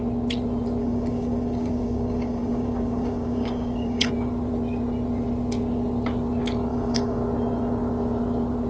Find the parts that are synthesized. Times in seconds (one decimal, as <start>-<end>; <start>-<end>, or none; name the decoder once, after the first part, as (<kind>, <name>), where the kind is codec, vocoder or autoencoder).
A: 0.8-4.1 (codec, DAC); 6.7-7.2